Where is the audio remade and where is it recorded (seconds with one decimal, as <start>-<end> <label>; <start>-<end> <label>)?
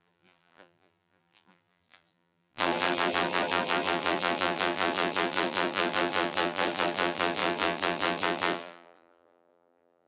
0.0-10.1 remade